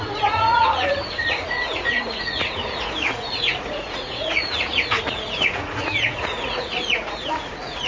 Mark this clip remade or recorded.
remade